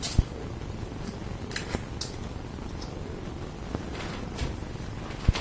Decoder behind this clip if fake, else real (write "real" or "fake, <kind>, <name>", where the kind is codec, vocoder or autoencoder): real